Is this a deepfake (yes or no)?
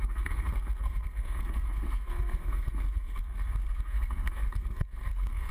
yes